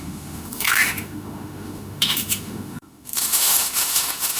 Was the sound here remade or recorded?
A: remade